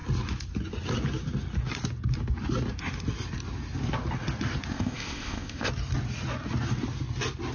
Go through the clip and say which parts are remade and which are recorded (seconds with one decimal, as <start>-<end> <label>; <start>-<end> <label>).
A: 0.0-4.7 recorded; 4.7-5.7 remade; 5.7-7.5 recorded